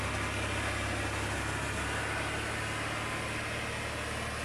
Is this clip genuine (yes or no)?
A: yes